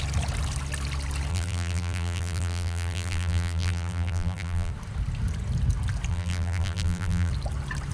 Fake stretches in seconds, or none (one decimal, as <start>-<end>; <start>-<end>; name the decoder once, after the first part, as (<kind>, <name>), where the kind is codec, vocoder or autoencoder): 1.3-4.7 (vocoder, BigVGAN v2); 6.1-7.3